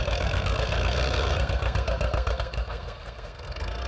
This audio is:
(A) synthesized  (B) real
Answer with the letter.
A